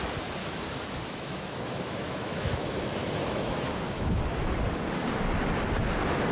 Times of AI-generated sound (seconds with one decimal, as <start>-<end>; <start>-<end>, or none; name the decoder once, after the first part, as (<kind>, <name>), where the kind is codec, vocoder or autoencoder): 0.4-4.2 (autoencoder, DAC-VAE)